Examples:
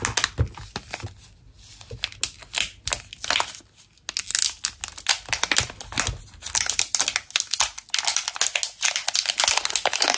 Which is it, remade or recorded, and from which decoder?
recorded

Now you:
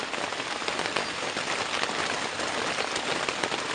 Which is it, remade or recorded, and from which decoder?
recorded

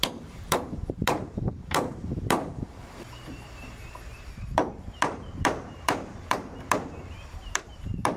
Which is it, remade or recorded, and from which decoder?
remade, vocoder, BigVGAN v2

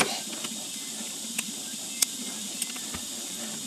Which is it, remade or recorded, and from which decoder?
recorded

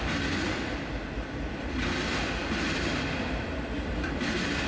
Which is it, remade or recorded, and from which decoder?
recorded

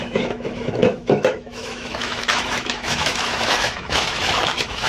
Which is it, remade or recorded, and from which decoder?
remade, autoencoder, DAC-VAE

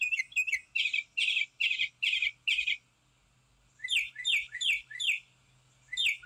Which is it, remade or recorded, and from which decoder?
recorded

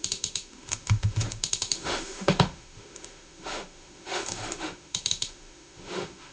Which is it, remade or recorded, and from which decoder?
remade, autoencoder, DAC-VAE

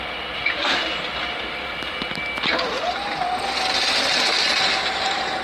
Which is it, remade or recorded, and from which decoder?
recorded